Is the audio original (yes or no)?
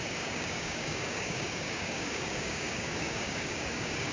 no